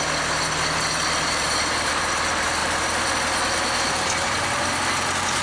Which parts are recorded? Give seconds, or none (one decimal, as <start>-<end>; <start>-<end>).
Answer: 0.0-5.4